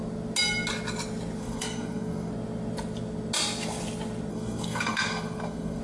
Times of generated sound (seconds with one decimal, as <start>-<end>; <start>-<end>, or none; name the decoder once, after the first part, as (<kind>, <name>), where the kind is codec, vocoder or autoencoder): 1.4-2.3 (codec, SNAC); 4.3-5.8